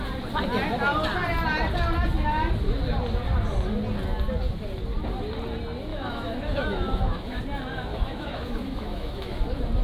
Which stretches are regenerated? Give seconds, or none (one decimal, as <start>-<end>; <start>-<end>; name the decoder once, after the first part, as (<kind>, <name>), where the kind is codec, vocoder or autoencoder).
5.9-7.4 (autoencoder, DAC-VAE); 7.9-9.4

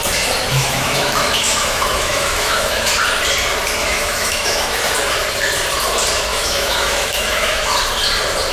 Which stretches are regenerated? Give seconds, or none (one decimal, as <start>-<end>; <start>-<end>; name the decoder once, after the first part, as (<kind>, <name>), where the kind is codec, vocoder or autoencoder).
0.5-2.9 (autoencoder, DAC-VAE); 3.8-4.8; 6.3-7.8

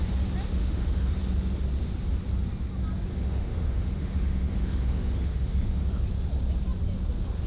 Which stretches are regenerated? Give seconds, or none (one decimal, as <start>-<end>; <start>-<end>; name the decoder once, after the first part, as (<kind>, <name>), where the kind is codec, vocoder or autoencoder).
0.6-1.2 (autoencoder, DAC-VAE); 3.1-6.0